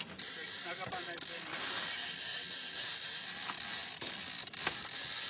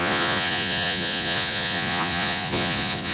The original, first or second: first